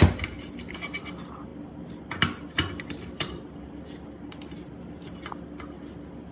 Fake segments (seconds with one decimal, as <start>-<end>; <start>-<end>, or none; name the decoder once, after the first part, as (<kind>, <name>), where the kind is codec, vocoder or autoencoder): none